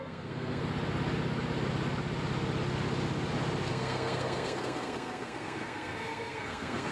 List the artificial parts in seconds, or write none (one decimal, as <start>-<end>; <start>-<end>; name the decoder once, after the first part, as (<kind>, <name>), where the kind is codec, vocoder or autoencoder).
0.0-0.6 (codec, SNAC); 3.7-6.9